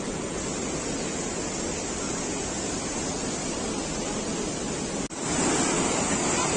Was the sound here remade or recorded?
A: recorded